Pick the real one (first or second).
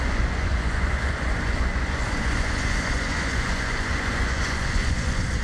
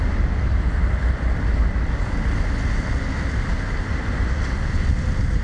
second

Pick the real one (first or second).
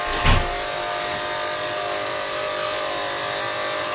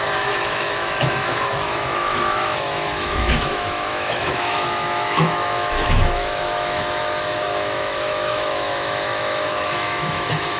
first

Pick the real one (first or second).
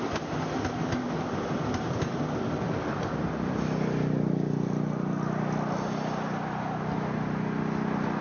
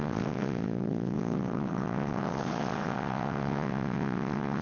first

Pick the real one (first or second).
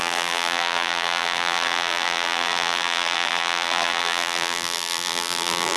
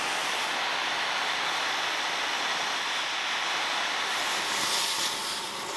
second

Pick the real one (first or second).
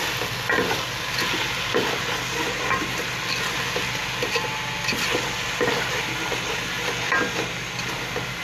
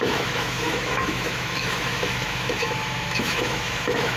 first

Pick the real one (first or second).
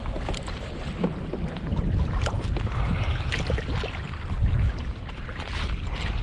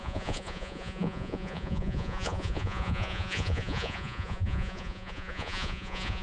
first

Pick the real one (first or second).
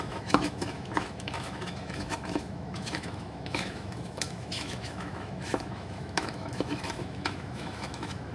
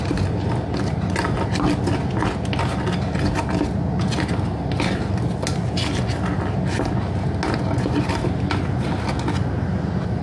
second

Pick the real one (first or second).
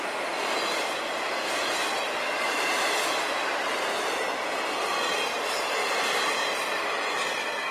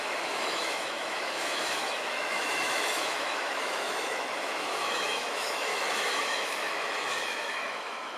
first